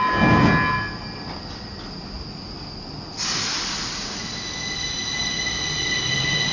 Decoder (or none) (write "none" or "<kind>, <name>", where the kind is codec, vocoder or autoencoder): none